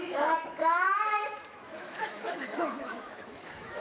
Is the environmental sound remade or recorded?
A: remade